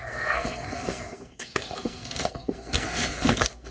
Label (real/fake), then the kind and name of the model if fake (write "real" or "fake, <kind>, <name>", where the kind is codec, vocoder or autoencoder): fake, codec, SNAC